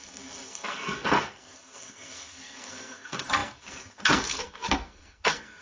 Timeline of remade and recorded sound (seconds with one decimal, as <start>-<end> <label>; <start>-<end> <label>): 0.0-5.6 remade